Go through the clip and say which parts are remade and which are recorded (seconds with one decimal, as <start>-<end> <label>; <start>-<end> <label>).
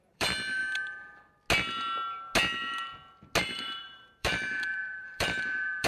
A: 0.0-0.6 remade; 0.6-3.4 recorded; 3.4-5.9 remade